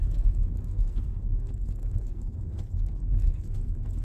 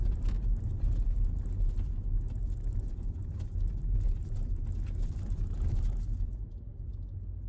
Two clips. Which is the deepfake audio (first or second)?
first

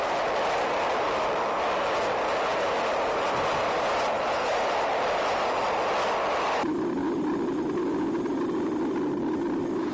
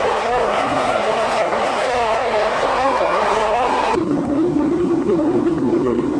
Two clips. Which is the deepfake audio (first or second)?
second